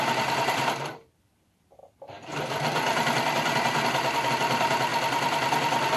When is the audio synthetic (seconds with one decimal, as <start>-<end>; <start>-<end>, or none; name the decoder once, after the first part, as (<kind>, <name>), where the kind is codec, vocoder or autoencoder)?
0.0-1.8 (vocoder, BigVGAN v2); 4.3-6.0